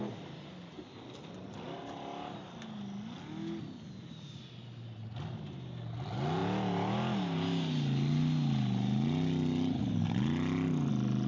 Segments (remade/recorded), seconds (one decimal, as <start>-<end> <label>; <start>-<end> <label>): 0.0-11.3 recorded